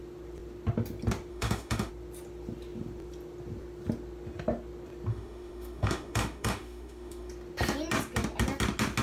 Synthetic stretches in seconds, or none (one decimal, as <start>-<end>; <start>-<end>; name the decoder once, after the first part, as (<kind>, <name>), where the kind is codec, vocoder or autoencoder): 1.3-1.9 (autoencoder, DAC-VAE); 5.1-7.3